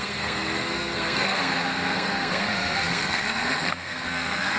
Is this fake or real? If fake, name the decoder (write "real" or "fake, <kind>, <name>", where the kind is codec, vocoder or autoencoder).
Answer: fake, codec, SNAC